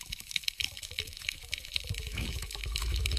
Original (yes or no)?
no